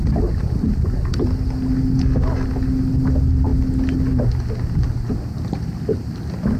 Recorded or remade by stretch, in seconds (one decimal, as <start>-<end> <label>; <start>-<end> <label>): 0.0-6.6 recorded